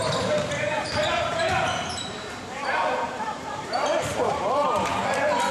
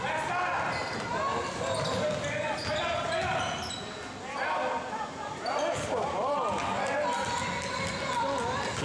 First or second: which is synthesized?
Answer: first